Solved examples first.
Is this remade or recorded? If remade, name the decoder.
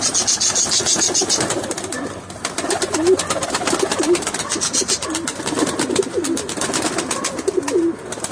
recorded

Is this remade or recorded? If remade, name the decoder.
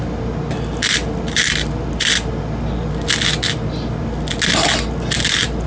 recorded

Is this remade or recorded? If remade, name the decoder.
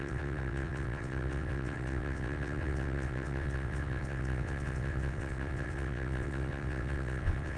remade, vocoder, WaveNeXt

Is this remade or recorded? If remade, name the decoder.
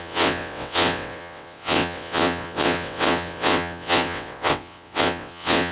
remade, vocoder, WaveNeXt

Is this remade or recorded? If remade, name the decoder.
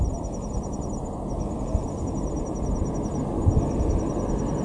recorded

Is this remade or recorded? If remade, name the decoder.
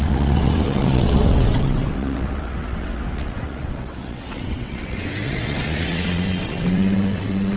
remade, vocoder, WaveNeXt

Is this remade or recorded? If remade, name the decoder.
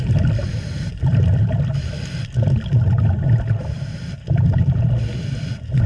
recorded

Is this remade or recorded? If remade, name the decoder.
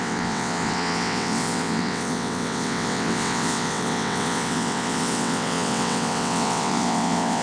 remade, vocoder, WaveNeXt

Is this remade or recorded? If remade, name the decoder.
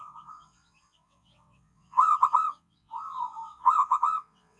remade, vocoder, WaveNeXt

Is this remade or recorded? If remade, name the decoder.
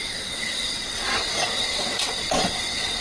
remade, vocoder, WaveNeXt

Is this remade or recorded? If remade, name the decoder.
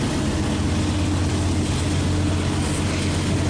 recorded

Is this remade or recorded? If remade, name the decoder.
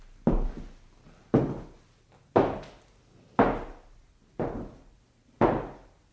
recorded